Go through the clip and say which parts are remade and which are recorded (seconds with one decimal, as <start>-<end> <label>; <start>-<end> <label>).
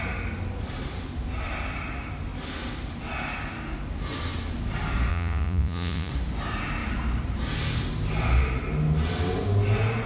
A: 0.0-5.1 recorded; 5.1-6.1 remade; 6.1-10.1 recorded